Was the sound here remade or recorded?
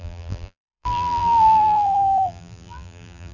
remade